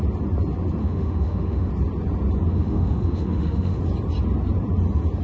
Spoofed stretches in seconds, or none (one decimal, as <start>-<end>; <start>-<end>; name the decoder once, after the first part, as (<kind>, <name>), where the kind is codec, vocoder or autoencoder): 0.8-1.7 (autoencoder, DAC-VAE); 2.5-3.8